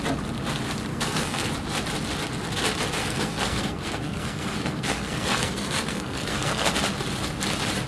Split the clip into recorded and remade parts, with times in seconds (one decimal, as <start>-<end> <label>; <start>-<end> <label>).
0.0-0.9 recorded; 0.9-1.5 remade; 1.5-3.0 recorded; 3.0-6.7 remade; 6.7-7.9 recorded